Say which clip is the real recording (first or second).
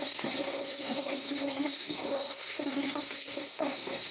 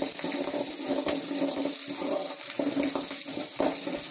second